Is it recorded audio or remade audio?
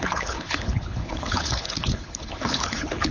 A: remade